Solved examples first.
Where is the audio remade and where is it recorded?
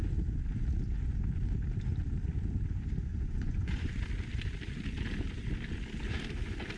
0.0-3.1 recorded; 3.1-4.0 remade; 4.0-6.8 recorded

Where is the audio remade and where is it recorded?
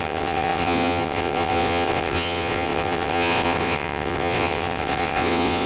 0.0-5.7 remade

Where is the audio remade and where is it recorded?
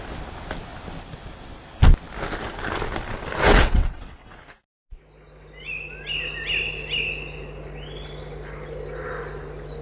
0.0-3.5 recorded; 3.5-4.3 remade; 4.3-9.8 recorded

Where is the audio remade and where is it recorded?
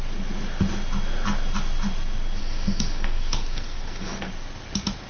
0.0-2.4 recorded; 2.4-4.3 remade; 4.3-5.1 recorded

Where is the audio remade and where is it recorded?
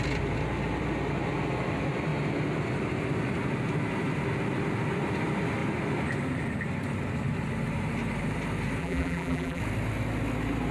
0.0-8.8 recorded; 8.8-9.6 remade; 9.6-10.7 recorded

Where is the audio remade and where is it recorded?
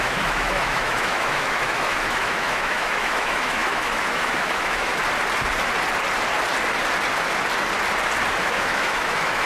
0.0-4.9 remade; 4.9-8.4 recorded; 8.4-9.5 remade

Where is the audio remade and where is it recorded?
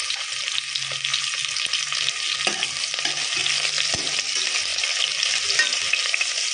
0.0-3.4 recorded; 3.4-4.1 remade; 4.1-4.7 recorded; 4.7-5.8 remade; 5.8-6.5 recorded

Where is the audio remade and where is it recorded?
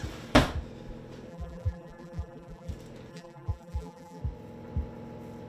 0.0-1.3 recorded; 1.3-2.7 remade; 2.7-3.1 recorded; 3.1-4.2 remade; 4.2-5.5 recorded